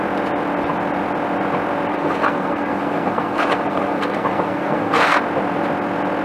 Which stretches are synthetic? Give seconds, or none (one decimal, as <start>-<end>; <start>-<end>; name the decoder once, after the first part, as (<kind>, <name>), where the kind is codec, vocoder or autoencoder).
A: 1.9-5.2 (codec, SNAC)